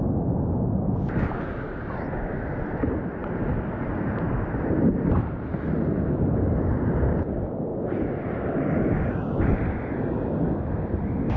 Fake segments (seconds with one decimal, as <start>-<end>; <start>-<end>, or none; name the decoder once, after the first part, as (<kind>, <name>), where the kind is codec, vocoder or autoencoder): none